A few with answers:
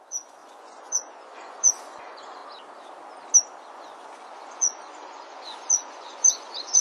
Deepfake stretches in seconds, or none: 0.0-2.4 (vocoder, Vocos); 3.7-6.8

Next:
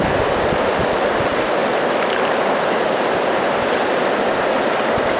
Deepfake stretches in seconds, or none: none

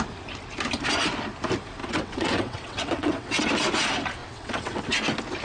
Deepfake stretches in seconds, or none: 1.8-3.5 (vocoder, WaveNeXt); 4.2-4.8

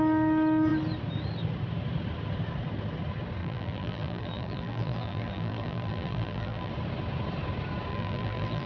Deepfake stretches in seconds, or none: 3.4-6.7 (vocoder, BigVGAN v2); 7.9-8.7

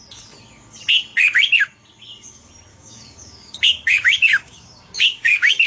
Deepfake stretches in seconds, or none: 2.7-5.7 (codec, DAC)

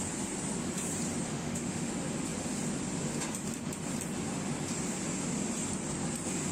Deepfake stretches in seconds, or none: 1.3-1.9 (autoencoder, DAC-VAE)

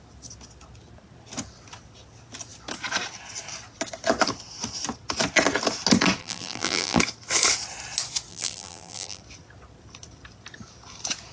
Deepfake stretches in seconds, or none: 6.2-7.0 (vocoder, BigVGAN v2); 8.3-9.2

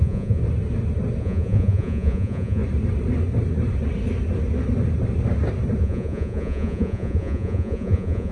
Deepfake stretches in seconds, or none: 0.0-0.4 (vocoder, Vocos); 1.2-2.6; 5.8-8.3